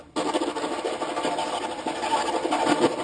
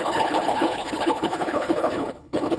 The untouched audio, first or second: first